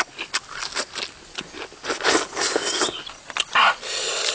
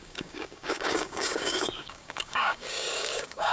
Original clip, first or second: first